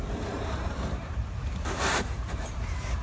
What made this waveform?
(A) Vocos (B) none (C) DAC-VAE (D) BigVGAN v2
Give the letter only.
D